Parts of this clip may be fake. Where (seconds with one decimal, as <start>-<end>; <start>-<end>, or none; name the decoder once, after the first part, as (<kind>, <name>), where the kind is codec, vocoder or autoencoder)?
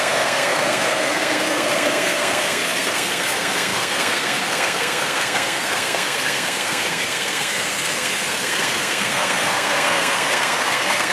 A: 0.0-11.1 (codec, SNAC)